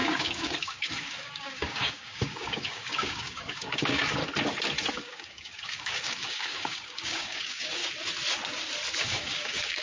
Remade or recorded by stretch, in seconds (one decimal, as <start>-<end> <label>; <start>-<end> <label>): 0.0-4.2 remade; 4.2-4.9 recorded; 4.9-7.8 remade; 7.8-9.0 recorded; 9.0-9.8 remade